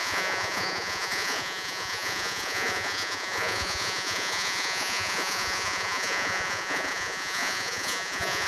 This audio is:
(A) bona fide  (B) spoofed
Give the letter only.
B